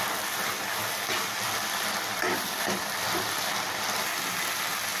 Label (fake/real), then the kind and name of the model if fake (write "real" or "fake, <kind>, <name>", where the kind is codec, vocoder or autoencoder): real